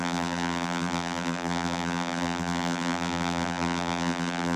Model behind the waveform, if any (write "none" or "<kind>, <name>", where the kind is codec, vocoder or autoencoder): vocoder, BigVGAN v2